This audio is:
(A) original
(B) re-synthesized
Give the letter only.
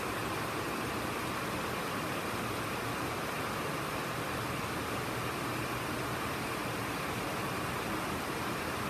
A